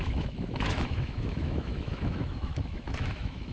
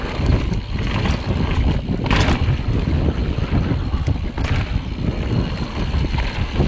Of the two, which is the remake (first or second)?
first